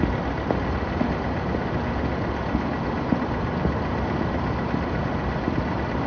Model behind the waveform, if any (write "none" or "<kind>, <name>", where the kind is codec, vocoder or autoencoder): none